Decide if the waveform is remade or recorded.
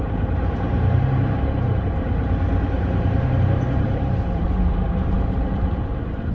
remade